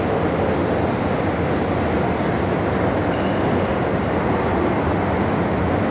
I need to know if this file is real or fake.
real